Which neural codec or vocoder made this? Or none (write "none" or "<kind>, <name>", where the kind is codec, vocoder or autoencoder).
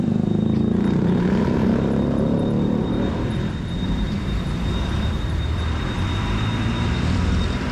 vocoder, BigVGAN v2